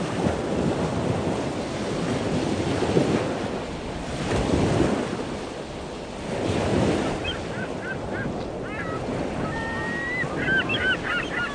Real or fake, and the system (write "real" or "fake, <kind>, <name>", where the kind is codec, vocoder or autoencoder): real